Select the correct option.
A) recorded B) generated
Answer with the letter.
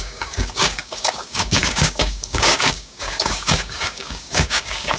B